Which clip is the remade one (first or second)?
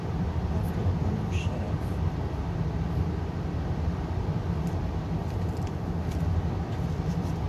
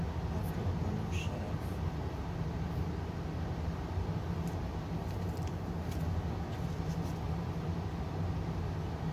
first